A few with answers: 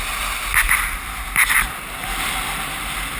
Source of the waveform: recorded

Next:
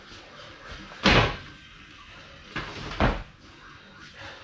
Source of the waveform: recorded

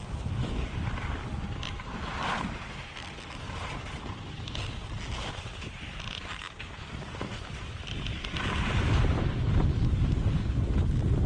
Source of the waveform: recorded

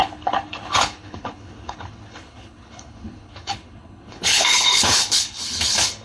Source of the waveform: remade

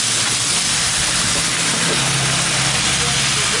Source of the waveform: recorded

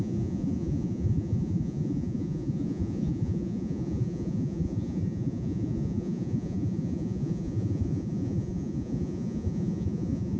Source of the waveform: remade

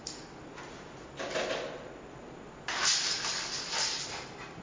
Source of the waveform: recorded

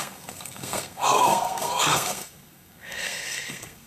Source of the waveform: remade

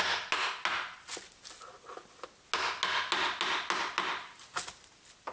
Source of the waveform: recorded